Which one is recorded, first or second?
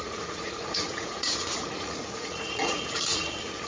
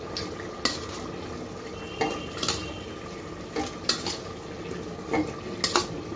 second